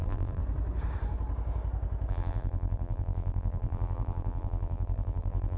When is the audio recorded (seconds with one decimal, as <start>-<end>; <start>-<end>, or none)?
0.4-2.1